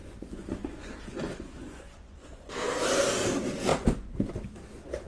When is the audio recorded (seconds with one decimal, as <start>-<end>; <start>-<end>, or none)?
2.5-3.7; 4.3-5.1